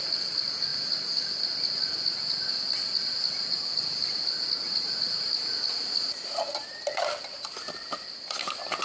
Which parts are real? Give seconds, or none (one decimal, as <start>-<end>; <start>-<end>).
0.0-8.8